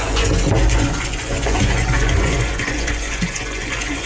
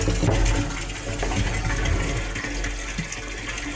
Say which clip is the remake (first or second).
first